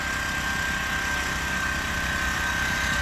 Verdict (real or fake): real